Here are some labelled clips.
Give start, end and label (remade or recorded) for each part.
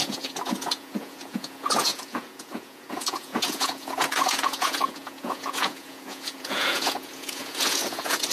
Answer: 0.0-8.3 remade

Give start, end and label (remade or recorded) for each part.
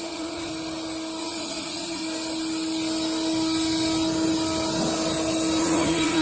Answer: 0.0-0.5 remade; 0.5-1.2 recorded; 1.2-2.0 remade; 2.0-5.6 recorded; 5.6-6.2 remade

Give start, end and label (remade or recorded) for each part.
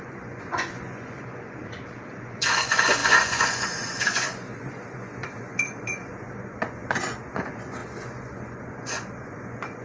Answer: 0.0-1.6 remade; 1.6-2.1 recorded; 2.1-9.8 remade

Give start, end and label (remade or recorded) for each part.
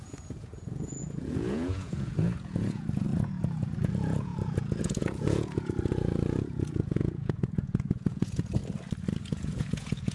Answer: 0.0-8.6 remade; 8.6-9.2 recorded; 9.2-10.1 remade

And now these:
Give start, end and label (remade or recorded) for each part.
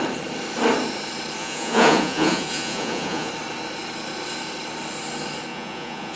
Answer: 0.0-1.4 recorded; 1.4-3.3 remade; 3.3-5.5 recorded; 5.5-6.2 remade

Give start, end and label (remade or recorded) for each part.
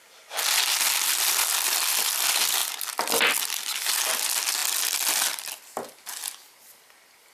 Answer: 0.0-7.3 recorded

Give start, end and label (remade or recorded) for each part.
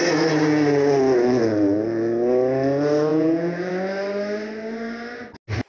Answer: 0.0-3.1 recorded; 3.1-3.7 remade; 3.7-5.7 recorded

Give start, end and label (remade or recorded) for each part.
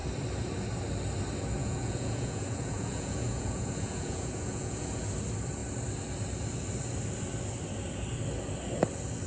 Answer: 0.0-1.6 recorded; 1.6-5.0 remade; 5.0-9.3 recorded